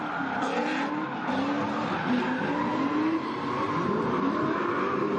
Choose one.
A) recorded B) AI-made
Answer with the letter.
A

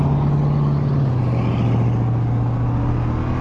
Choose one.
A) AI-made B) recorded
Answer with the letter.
B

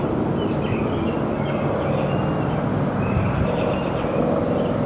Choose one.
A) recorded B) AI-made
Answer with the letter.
A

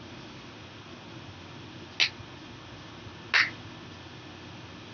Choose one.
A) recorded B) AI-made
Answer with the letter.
A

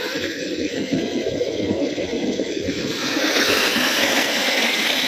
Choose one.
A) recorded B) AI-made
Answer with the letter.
B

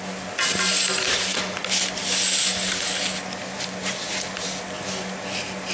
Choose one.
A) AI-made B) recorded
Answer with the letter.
B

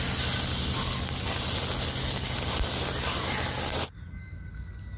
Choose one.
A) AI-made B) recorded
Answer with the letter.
B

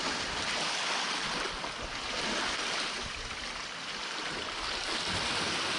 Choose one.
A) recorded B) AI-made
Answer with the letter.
A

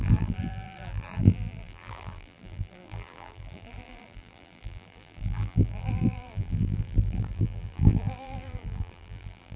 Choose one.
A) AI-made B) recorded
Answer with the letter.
A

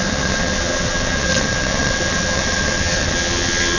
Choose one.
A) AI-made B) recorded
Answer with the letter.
A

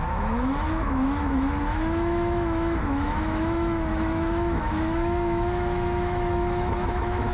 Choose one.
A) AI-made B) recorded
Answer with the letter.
A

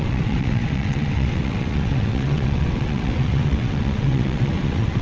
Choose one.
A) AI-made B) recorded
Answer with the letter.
A